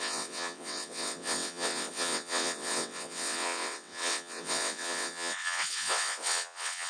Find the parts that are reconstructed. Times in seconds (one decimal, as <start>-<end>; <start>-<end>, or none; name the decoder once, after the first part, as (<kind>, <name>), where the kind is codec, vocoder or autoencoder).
0.0-6.9 (vocoder, WaveNeXt)